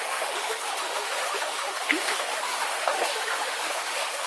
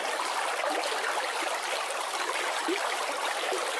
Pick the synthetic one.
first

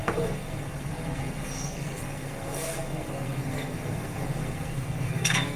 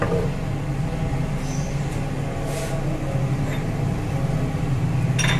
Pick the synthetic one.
first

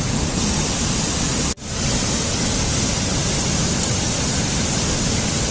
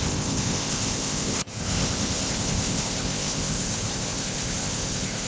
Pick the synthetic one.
second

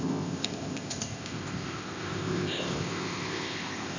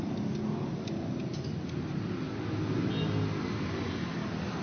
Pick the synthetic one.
first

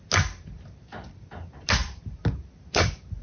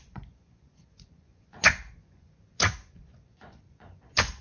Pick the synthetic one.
second